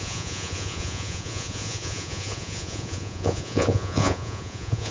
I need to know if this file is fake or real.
fake